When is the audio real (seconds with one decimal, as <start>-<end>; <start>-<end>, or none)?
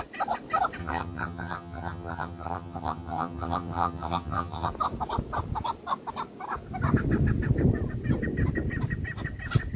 0.0-0.8; 4.7-9.8